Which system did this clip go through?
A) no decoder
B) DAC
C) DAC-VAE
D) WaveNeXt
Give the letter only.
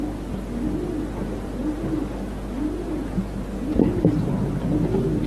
A